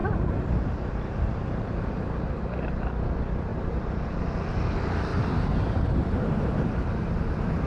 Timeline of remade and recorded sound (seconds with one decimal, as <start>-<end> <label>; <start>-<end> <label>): 0.0-2.7 remade; 2.7-3.5 recorded; 3.5-4.2 remade; 4.2-5.1 recorded; 5.1-7.2 remade; 7.2-7.7 recorded